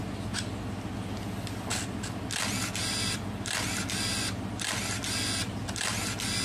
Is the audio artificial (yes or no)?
no